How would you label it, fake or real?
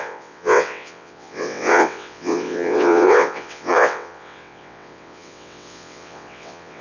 fake